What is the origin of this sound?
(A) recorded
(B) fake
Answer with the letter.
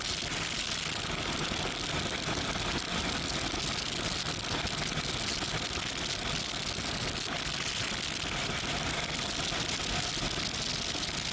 A